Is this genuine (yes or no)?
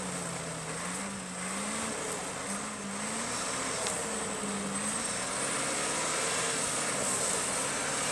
yes